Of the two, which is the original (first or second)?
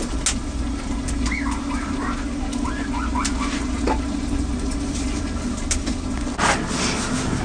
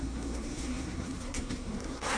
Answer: first